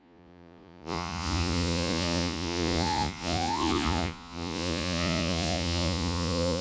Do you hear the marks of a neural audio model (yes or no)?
yes